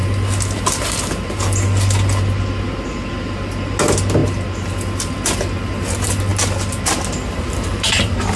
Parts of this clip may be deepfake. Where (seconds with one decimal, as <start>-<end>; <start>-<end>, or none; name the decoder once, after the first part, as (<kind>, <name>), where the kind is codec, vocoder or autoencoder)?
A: none